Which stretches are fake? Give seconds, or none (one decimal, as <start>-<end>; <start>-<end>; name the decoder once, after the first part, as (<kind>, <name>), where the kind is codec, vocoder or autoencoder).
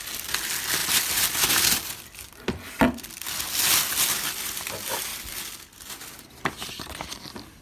none